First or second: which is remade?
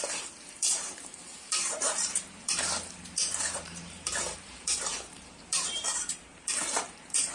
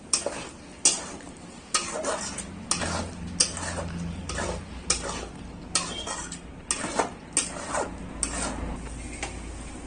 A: first